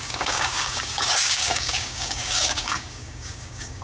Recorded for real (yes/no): no